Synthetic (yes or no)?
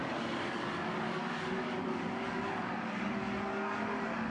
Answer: yes